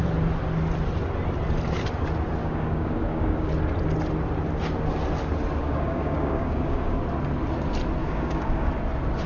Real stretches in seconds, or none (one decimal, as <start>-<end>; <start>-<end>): 0.0-2.4; 3.5-5.6; 6.9-8.0; 8.7-9.3